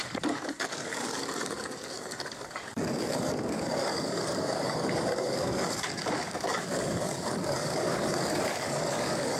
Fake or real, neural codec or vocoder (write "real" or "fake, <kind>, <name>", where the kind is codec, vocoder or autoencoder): fake, codec, DAC